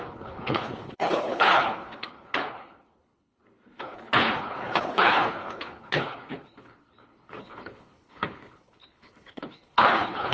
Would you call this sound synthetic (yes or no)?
yes